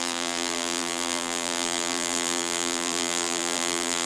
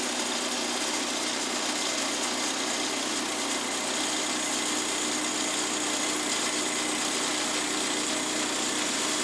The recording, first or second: second